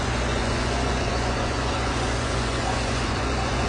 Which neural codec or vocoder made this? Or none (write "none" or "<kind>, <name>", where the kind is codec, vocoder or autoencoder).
vocoder, Vocos